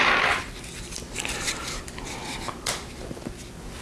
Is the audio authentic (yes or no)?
yes